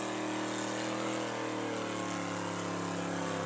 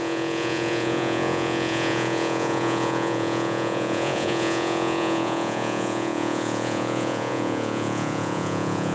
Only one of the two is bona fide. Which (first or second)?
first